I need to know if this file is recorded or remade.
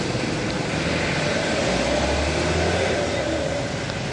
recorded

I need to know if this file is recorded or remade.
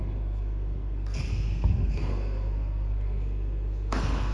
remade